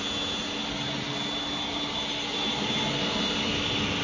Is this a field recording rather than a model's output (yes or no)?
yes